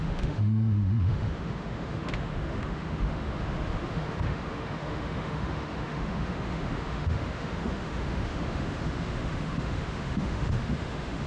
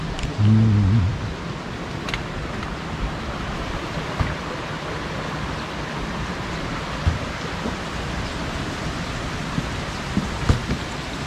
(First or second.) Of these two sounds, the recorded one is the second